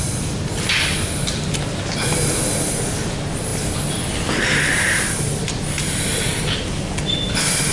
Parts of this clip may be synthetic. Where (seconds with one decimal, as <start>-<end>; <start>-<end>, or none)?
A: none